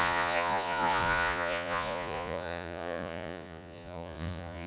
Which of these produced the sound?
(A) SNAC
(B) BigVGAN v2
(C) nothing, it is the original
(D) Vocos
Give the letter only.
D